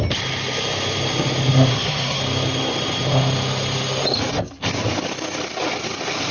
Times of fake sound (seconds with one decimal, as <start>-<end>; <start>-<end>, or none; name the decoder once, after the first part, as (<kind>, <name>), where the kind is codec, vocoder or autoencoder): 1.7-2.2 (codec, SNAC)